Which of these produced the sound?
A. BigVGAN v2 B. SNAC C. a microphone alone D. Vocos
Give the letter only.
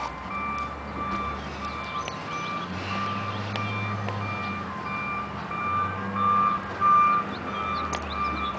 C